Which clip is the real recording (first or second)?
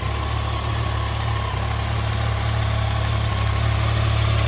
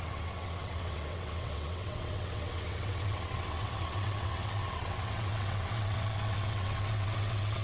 first